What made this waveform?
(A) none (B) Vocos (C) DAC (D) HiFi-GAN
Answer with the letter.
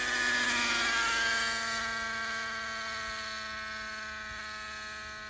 A